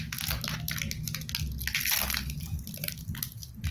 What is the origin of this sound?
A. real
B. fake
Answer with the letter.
A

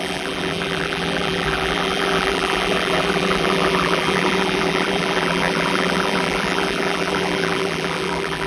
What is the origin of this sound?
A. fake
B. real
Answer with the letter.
A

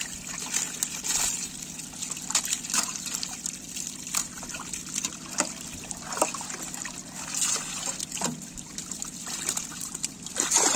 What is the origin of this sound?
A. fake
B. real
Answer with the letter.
B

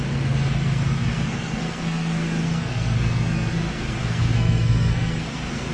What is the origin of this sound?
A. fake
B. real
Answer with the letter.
A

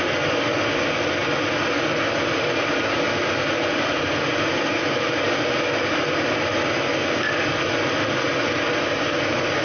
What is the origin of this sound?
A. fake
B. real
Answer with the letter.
B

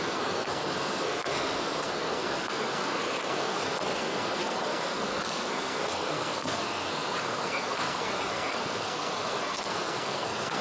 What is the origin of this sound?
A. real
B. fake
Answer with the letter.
B